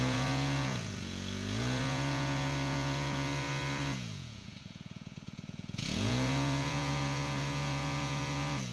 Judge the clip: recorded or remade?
remade